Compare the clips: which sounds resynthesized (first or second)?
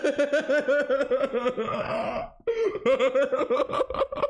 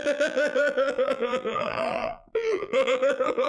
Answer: second